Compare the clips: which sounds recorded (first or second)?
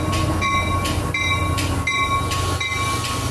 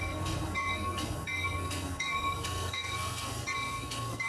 first